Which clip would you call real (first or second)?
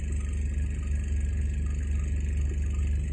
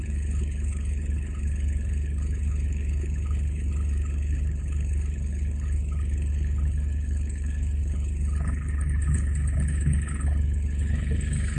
first